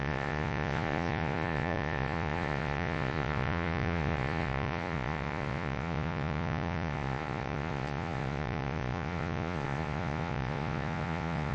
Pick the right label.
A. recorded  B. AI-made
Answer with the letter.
B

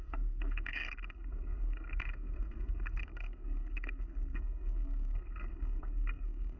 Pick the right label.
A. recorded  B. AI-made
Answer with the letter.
B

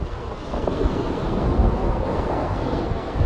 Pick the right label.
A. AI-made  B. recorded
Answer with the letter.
A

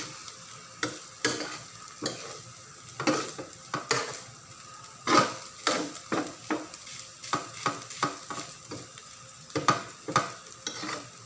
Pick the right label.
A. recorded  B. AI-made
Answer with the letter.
A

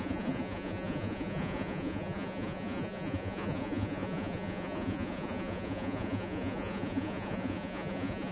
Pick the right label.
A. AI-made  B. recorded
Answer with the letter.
A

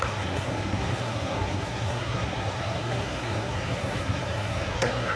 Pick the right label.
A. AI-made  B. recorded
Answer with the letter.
A